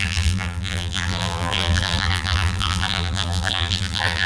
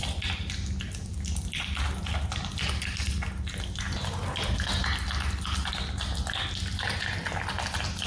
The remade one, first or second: first